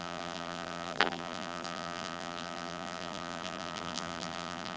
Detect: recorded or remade remade